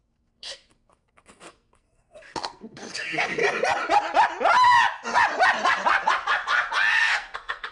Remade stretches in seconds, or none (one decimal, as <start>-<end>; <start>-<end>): 0.0-3.4; 6.9-7.7